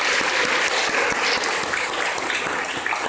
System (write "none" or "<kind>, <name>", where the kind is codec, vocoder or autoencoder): none